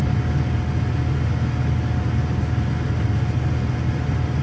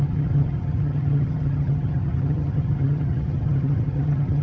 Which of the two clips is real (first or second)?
first